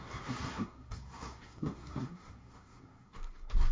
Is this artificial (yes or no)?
yes